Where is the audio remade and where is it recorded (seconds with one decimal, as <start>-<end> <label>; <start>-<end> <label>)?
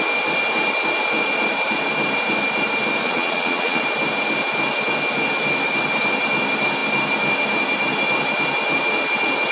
0.0-3.0 recorded; 3.0-3.8 remade; 3.8-9.5 recorded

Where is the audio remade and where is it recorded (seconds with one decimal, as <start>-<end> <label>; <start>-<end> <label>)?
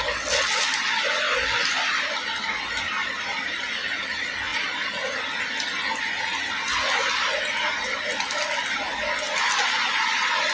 0.0-1.7 recorded; 1.7-3.6 remade; 3.6-4.5 recorded; 4.5-5.2 remade; 5.2-7.0 recorded; 7.0-8.9 remade; 8.9-10.5 recorded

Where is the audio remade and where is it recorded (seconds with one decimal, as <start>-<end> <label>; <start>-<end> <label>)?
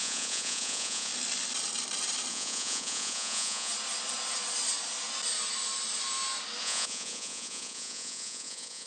0.0-1.1 remade; 1.1-2.3 recorded; 2.3-3.7 remade; 3.7-6.6 recorded; 6.6-8.9 remade